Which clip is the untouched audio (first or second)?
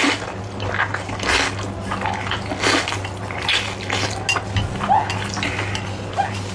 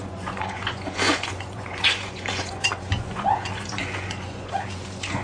first